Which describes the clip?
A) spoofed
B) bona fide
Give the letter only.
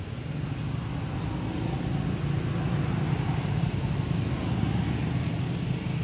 B